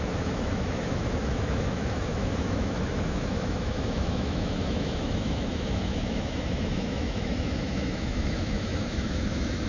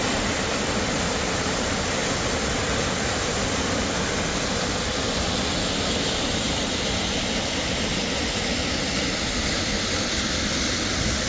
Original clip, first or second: second